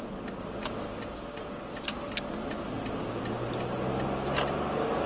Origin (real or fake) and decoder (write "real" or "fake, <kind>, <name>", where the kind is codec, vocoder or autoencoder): real